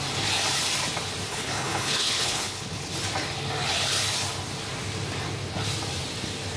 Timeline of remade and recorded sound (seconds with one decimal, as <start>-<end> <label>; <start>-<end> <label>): 0.0-1.3 recorded; 1.3-2.9 remade; 2.9-6.6 recorded